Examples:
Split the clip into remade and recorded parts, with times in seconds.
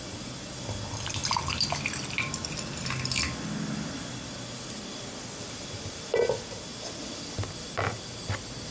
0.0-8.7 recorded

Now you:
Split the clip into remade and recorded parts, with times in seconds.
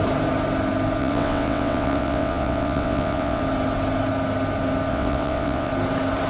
0.0-1.0 recorded; 1.0-3.4 remade; 3.4-4.9 recorded; 4.9-5.7 remade; 5.7-6.3 recorded